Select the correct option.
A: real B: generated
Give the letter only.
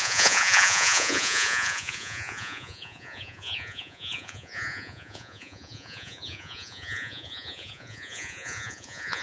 B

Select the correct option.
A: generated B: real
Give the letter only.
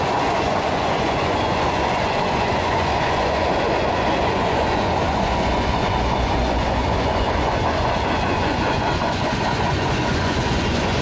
A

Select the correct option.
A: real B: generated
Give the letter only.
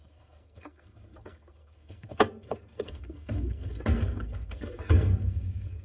B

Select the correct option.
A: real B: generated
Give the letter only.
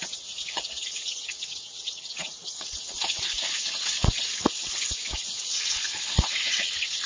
B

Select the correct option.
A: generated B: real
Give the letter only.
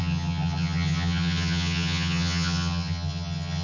A